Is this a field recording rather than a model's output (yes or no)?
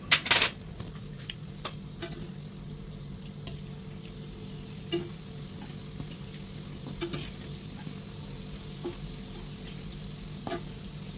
yes